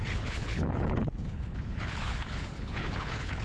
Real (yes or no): no